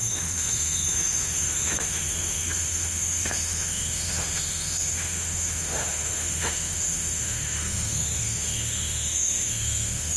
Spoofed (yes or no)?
yes